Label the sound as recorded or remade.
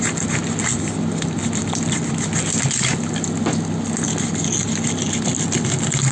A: recorded